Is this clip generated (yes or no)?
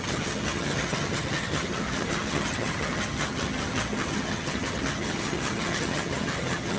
yes